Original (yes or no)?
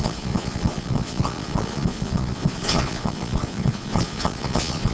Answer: no